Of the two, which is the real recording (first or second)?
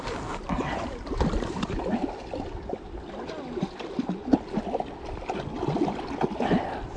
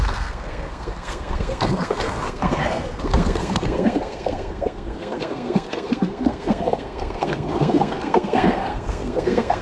first